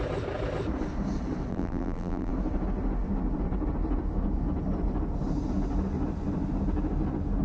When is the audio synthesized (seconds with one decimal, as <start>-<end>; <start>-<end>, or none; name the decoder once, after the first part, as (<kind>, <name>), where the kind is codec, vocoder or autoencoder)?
1.5-2.3 (vocoder, BigVGAN v2)